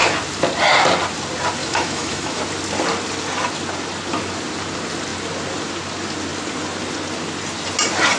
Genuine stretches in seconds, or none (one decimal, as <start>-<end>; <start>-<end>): 0.0-1.6; 2.4-8.2